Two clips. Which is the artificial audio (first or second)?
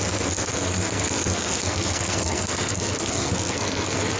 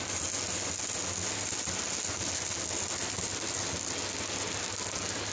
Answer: first